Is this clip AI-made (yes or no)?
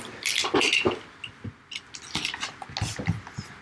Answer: no